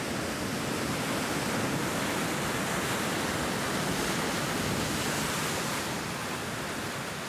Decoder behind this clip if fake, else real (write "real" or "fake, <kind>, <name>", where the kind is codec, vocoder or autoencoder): real